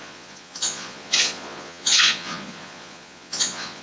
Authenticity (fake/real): fake